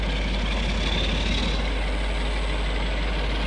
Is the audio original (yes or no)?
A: yes